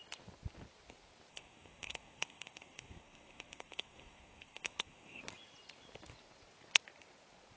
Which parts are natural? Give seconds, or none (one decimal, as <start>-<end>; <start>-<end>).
0.0-1.3; 5.2-7.6